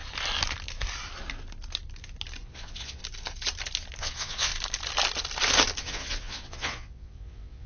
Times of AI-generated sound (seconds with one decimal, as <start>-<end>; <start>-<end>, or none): 2.4-3.0; 4.0-4.5; 5.8-7.7